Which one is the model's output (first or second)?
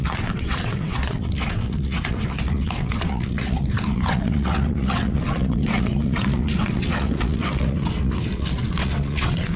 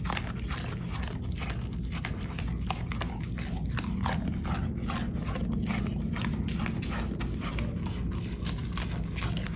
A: first